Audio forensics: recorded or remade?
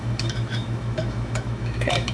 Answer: remade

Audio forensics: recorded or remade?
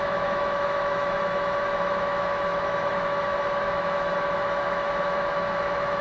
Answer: remade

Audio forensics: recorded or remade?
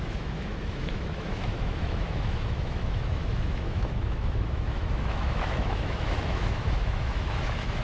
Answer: remade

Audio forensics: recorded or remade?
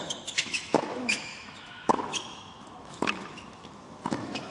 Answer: remade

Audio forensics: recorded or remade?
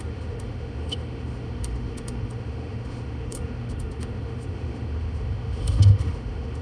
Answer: remade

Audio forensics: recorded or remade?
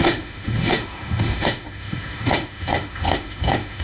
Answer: remade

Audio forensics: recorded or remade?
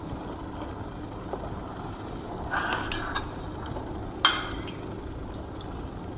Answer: recorded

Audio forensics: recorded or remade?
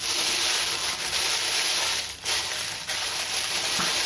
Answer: recorded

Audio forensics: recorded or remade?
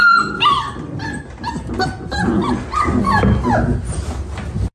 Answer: recorded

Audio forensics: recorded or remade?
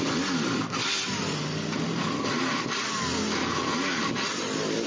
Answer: recorded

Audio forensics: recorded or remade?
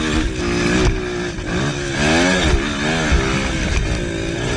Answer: recorded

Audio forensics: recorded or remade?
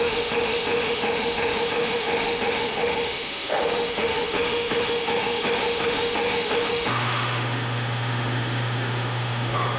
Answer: remade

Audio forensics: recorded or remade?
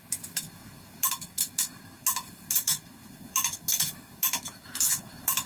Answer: remade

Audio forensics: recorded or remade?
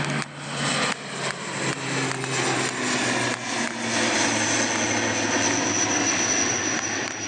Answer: recorded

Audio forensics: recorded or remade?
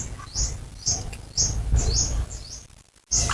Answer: recorded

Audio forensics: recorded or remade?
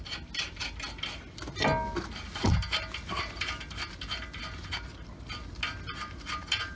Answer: recorded